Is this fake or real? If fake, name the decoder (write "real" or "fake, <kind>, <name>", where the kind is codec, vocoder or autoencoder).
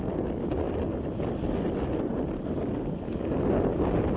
real